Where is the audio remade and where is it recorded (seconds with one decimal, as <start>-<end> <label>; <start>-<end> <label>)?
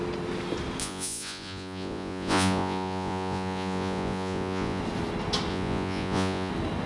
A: 0.0-0.8 recorded; 0.8-4.8 remade; 4.8-5.5 recorded; 5.5-6.5 remade; 6.5-6.9 recorded